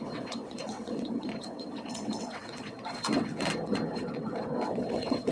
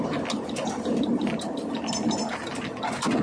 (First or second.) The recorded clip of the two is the second